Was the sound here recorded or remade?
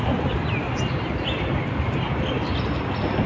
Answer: recorded